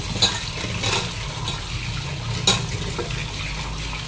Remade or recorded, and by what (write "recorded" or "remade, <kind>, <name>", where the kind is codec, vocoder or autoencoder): recorded